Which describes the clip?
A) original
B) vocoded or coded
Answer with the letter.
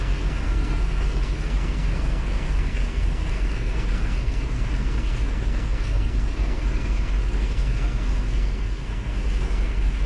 B